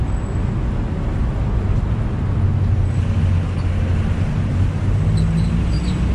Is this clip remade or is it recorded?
recorded